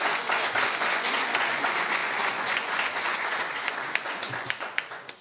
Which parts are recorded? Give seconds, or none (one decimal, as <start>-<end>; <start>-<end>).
none